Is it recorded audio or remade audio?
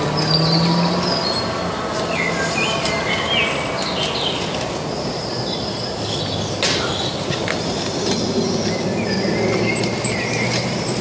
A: recorded